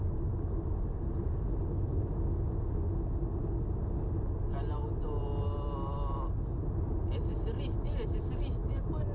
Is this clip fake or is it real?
real